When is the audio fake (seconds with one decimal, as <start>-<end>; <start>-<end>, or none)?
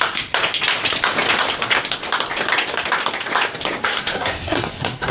3.8-5.1